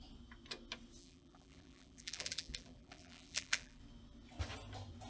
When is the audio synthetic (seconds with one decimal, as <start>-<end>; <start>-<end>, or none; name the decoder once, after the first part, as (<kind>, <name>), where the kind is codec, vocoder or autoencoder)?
1.0-3.8 (vocoder, BigVGAN v2)